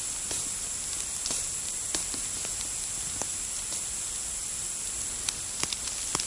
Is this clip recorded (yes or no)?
yes